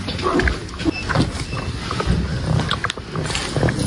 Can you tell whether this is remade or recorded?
recorded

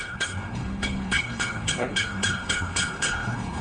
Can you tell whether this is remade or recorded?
remade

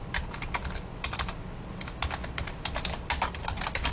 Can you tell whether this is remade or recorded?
recorded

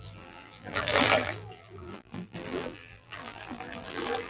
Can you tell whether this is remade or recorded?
remade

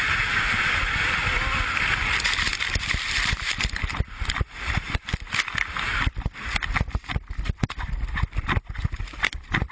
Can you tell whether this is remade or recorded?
recorded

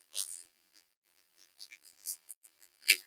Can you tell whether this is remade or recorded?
remade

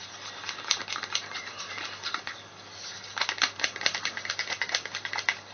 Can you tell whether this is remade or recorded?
recorded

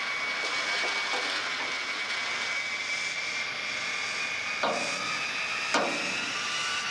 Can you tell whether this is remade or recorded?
recorded